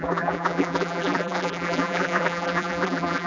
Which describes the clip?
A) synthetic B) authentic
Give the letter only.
A